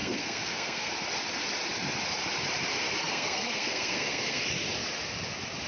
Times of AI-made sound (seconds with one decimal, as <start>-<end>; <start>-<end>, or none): 0.0-0.9; 3.0-4.4